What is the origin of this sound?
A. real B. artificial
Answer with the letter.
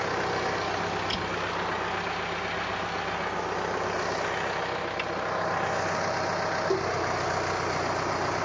A